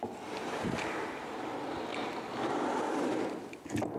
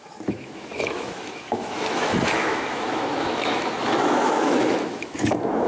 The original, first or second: first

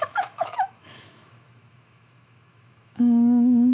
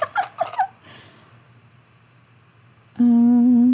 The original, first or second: second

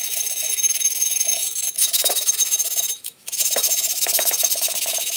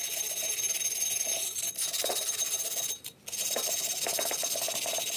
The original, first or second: second